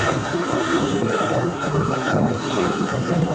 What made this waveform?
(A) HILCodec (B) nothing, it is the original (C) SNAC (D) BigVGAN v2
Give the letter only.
C